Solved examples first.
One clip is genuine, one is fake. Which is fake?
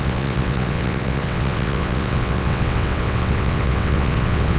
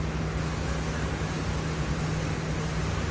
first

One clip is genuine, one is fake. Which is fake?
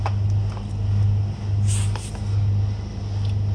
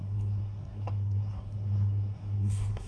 second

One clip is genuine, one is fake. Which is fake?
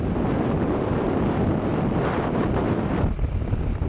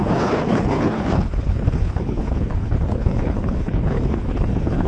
second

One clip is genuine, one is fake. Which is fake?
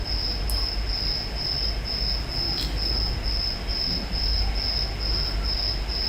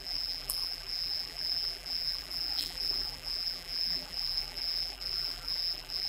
second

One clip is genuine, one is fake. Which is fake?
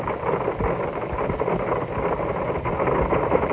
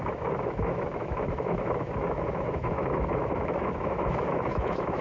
second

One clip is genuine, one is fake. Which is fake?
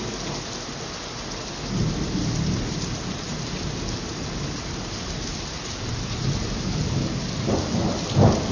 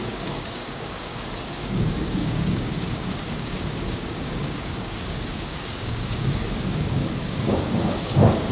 second